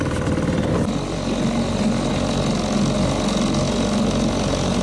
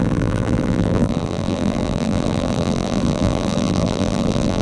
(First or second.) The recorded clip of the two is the first